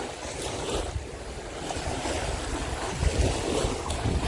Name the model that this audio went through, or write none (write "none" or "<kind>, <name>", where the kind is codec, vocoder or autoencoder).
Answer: none